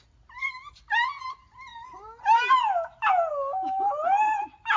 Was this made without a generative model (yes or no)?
yes